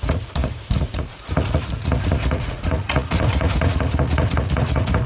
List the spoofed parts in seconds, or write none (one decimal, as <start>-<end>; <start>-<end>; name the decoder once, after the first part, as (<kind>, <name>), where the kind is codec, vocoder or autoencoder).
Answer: 0.0-5.1 (vocoder, Vocos)